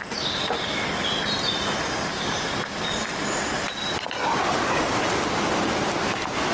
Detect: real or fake real